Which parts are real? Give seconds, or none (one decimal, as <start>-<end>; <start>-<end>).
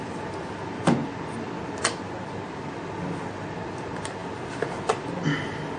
0.0-5.8